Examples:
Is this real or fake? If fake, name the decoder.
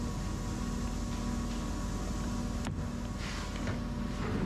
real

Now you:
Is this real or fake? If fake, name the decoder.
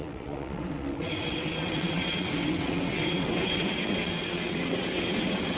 fake, vocoder, WaveNeXt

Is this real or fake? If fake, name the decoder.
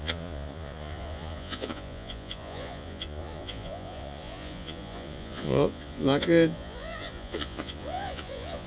fake, vocoder, Vocos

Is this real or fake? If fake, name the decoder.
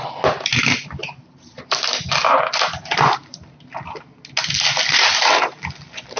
real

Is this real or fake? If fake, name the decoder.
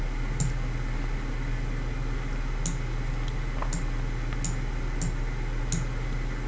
real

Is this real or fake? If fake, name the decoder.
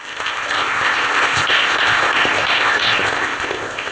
fake, codec, ZipCodec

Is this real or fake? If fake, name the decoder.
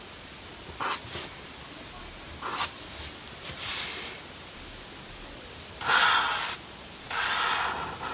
real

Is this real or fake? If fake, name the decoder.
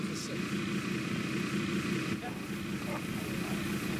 real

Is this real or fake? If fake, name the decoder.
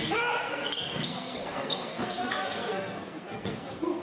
fake, codec, SNAC